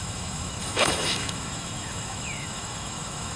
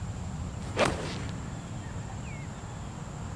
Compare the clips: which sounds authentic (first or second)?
second